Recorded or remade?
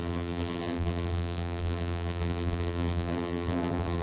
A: remade